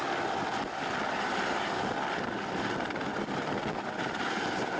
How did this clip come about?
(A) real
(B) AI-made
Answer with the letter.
A